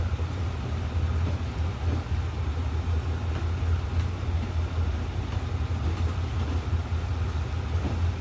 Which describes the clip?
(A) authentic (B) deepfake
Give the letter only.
A